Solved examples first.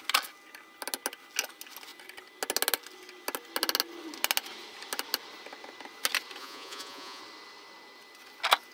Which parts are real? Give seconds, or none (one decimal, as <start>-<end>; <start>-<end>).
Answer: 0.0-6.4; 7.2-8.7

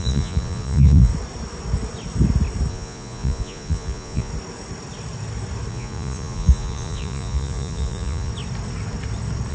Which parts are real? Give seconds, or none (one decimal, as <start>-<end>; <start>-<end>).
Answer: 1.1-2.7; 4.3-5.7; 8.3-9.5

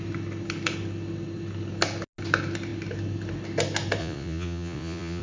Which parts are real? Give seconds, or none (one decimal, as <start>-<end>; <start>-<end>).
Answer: 0.0-4.0